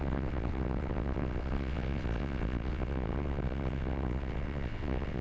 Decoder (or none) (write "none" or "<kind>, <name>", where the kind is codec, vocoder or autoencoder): vocoder, WaveNeXt